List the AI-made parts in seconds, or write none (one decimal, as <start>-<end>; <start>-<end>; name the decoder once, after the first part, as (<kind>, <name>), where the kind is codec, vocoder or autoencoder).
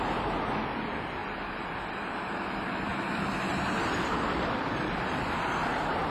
0.0-2.9 (vocoder, BigVGAN v2); 3.8-6.1